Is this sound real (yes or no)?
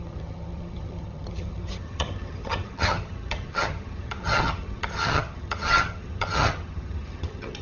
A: no